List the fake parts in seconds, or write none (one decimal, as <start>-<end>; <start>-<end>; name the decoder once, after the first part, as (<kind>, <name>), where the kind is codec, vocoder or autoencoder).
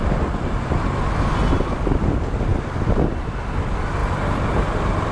4.0-5.1 (vocoder, BigVGAN v2)